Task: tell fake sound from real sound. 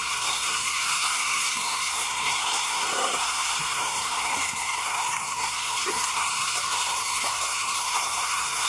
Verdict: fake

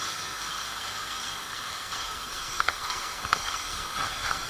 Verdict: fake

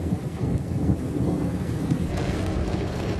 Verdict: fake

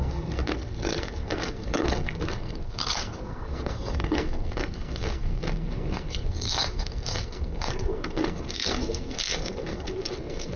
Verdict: fake